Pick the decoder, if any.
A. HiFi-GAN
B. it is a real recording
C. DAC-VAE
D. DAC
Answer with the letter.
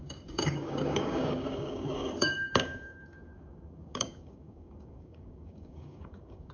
D